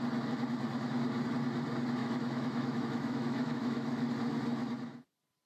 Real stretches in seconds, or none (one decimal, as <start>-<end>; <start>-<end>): 0.0-2.0; 4.1-5.5